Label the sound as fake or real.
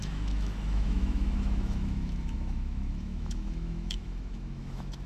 fake